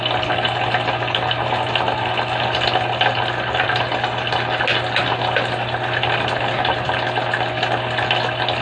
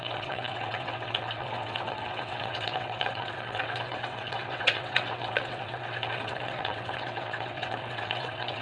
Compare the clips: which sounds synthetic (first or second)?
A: second